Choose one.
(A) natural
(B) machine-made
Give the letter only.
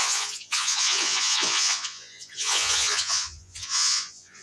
B